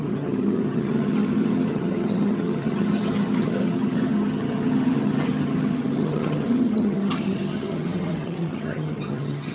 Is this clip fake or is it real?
fake